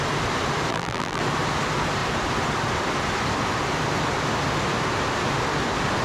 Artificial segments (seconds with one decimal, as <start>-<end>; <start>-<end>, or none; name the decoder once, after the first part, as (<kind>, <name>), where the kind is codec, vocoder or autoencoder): 0.7-1.2 (vocoder, BigVGAN v2)